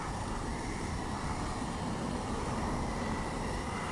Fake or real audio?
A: fake